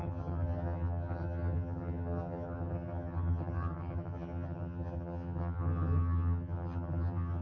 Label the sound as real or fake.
fake